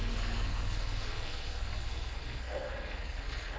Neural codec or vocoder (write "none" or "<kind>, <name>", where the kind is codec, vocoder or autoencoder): codec, SNAC